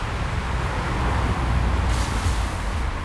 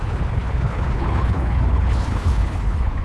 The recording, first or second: first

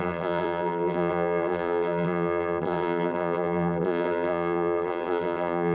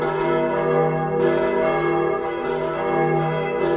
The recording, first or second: second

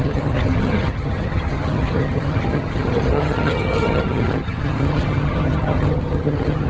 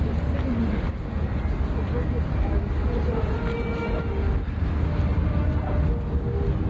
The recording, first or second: second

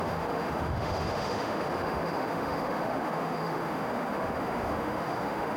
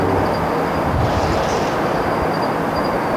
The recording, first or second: second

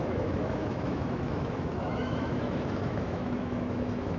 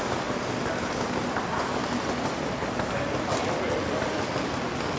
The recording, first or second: second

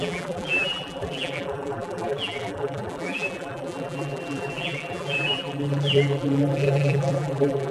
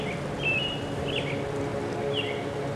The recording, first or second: second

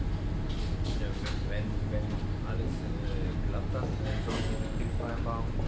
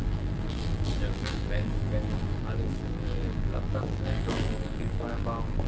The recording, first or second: first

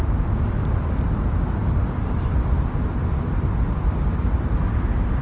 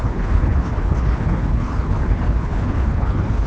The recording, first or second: first